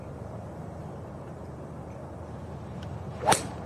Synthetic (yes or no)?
yes